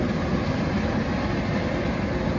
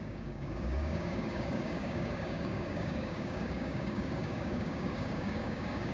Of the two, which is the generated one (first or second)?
second